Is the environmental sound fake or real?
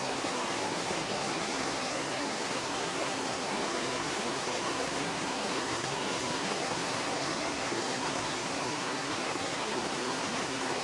fake